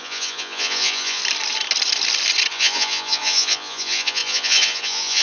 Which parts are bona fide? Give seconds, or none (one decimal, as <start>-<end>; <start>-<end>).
1.2-2.5